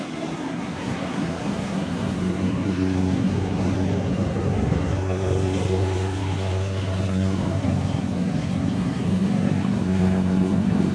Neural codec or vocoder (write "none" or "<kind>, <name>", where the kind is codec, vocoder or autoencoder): codec, SNAC